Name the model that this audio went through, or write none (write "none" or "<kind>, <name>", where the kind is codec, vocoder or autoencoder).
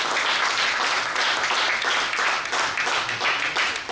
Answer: none